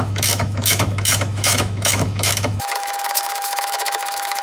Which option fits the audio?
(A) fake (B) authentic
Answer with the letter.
A